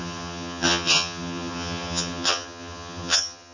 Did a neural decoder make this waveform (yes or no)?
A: yes